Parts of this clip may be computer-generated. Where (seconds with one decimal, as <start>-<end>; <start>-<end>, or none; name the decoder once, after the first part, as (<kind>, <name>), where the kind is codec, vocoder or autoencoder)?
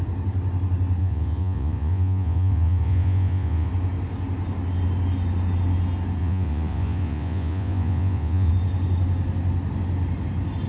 1.0-3.7 (vocoder, Vocos); 6.2-8.5